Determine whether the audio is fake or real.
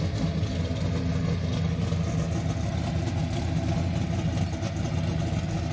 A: real